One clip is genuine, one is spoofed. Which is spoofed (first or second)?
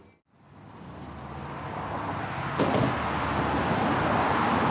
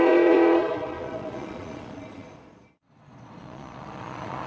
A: second